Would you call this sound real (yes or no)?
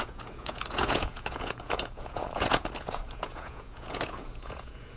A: no